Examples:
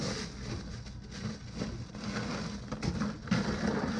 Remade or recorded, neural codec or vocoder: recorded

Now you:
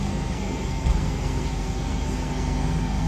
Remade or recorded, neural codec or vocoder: remade, codec, SNAC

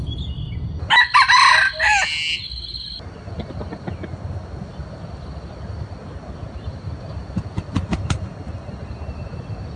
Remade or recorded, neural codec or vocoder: recorded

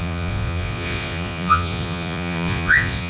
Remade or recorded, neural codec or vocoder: remade, vocoder, Vocos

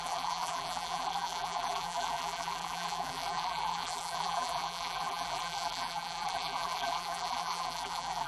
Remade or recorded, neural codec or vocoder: remade, vocoder, BigVGAN v2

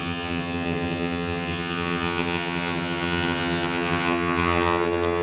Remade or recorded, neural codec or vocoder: remade, vocoder, HiFi-GAN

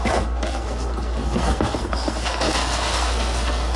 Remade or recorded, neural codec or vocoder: remade, codec, SNAC